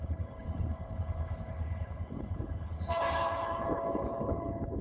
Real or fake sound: fake